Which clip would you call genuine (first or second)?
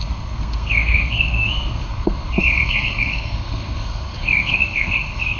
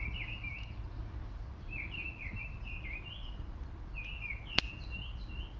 second